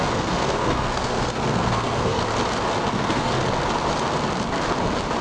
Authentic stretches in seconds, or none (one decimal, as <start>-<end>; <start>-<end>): 2.2-2.9; 3.3-5.2